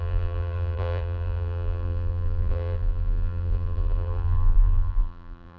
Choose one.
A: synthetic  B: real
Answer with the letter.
A